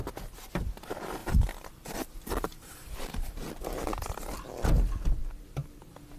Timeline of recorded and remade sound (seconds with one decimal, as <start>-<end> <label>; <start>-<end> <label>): 0.0-1.2 recorded; 1.2-3.5 remade; 3.5-6.2 recorded